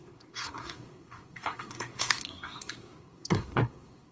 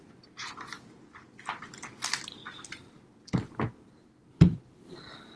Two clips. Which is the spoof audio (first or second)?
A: first